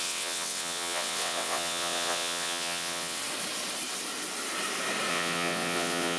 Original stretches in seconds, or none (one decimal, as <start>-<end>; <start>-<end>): 3.2-5.1